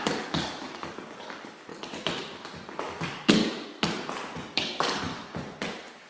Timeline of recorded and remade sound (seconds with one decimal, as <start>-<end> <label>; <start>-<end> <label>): 0.0-1.7 remade; 1.7-2.8 recorded; 2.8-3.4 remade; 3.4-4.5 recorded; 4.5-5.1 remade; 5.1-6.1 recorded